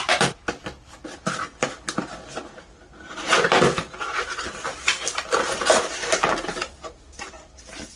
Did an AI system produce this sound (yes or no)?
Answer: no